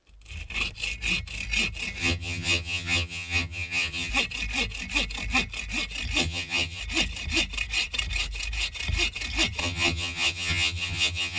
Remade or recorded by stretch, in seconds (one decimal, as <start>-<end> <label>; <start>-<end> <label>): 0.0-2.0 recorded; 2.0-4.1 remade; 4.1-6.2 recorded; 6.2-6.8 remade; 6.8-9.6 recorded; 9.6-11.4 remade